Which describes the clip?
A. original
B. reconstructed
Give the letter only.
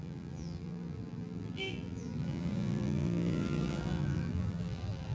B